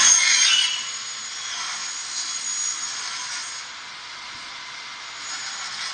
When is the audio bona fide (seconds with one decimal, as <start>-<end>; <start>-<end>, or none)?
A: 0.6-4.1; 4.9-5.9